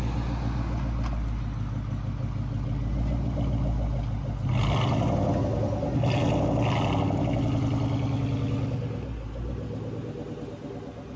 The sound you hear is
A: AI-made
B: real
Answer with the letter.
B